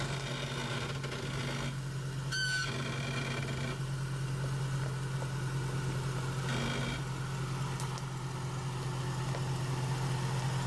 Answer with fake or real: real